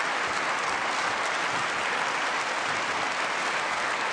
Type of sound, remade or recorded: recorded